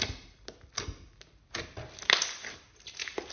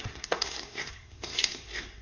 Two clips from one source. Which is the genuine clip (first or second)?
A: first